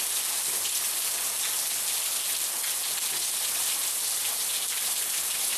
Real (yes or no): yes